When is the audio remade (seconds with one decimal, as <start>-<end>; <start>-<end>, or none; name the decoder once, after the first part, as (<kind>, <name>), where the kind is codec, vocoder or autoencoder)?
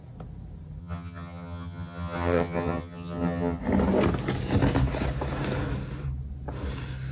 0.8-3.6 (vocoder, HiFi-GAN)